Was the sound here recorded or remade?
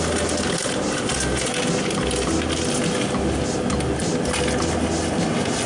recorded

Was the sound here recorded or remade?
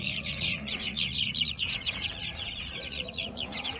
remade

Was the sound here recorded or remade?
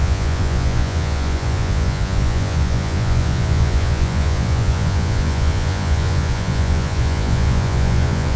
remade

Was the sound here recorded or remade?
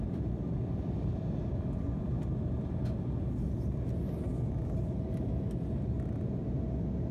recorded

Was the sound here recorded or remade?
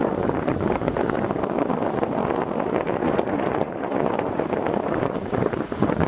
remade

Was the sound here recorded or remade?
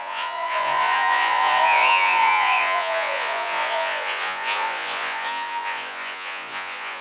remade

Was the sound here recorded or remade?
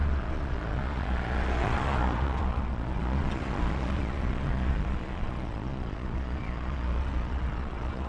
remade